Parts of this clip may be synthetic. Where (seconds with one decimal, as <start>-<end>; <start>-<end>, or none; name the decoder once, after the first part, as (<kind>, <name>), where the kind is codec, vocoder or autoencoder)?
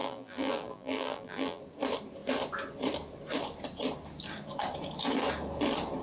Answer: 0.0-1.6 (vocoder, BigVGAN v2)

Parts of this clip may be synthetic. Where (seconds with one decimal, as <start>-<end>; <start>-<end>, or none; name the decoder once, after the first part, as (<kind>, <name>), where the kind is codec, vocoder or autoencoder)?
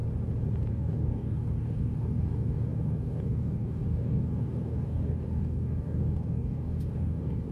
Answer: 0.7-7.5 (codec, DAC)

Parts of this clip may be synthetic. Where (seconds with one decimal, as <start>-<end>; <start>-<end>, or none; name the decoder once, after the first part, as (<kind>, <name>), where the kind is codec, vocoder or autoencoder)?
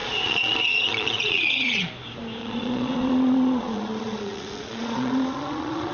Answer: 0.0-1.9 (vocoder, Vocos); 2.4-5.9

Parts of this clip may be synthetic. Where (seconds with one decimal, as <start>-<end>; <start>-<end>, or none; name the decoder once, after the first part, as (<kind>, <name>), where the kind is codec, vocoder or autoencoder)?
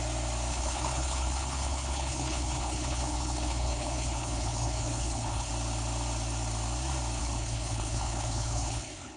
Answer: 0.5-5.5 (codec, HILCodec); 7.2-9.2